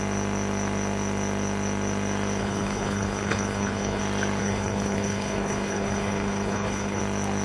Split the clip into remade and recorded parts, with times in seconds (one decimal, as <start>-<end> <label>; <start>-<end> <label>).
0.0-2.4 recorded; 2.4-4.0 remade; 4.0-4.4 recorded; 4.4-7.0 remade; 7.0-7.4 recorded